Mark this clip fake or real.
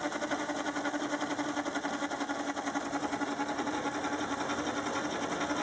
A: real